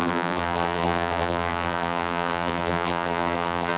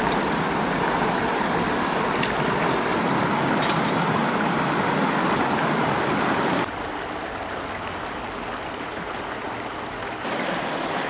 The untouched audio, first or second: second